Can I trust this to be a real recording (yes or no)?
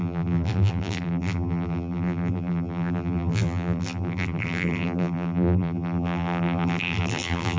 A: no